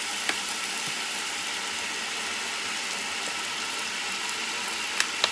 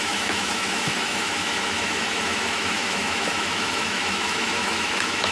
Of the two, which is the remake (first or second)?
second